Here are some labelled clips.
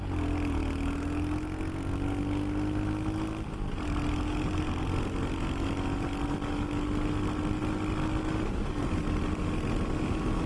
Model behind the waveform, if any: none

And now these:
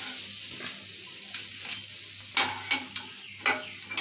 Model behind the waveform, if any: none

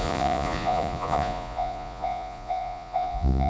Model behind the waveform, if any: vocoder, Vocos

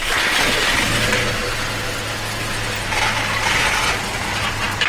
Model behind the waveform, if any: none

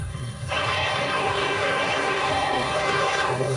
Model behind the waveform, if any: codec, SNAC